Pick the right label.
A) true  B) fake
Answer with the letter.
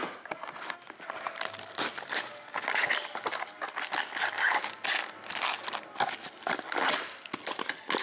A